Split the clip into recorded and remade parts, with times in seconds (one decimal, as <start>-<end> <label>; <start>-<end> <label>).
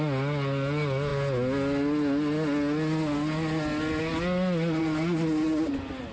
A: 0.0-6.1 recorded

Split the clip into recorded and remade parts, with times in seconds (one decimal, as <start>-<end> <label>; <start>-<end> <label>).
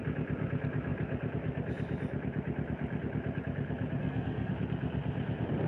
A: 0.0-4.0 recorded; 4.0-4.5 remade; 4.5-5.7 recorded